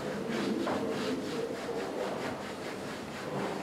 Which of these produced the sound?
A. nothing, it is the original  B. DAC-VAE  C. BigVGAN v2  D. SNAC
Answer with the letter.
C